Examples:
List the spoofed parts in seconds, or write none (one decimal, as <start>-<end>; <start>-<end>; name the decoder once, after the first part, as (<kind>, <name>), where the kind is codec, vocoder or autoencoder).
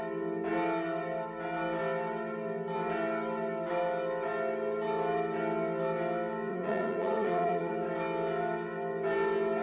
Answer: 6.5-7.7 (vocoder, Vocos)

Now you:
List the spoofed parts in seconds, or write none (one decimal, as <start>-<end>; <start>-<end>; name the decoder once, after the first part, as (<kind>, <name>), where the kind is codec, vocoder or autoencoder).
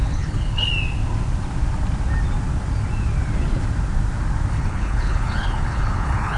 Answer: 0.0-0.7 (codec, HILCodec); 4.5-6.4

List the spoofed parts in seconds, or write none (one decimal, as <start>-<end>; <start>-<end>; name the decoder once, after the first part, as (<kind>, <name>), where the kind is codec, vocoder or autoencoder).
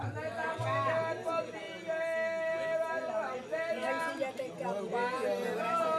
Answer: none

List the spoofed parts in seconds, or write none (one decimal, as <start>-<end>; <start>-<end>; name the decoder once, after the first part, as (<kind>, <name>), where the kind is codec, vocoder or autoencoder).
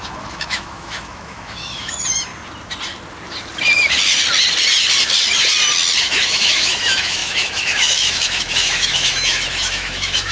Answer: 0.0-2.3 (autoencoder, DAC-VAE); 6.0-10.3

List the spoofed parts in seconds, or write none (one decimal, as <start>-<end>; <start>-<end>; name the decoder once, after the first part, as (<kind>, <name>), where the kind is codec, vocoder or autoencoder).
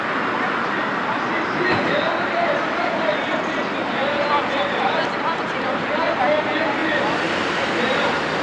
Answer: none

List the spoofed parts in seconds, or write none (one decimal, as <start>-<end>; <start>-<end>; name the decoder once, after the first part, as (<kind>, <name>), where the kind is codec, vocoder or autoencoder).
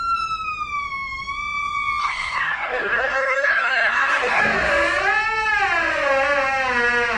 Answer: 2.0-4.4 (codec, SNAC)